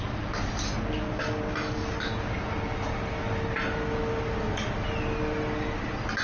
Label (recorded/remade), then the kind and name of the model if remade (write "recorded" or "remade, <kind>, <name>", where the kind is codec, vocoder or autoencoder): recorded